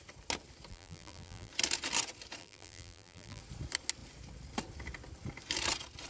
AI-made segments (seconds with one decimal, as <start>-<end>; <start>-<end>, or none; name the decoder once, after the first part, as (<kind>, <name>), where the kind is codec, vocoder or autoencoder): 0.7-1.5 (vocoder, BigVGAN v2); 2.4-3.4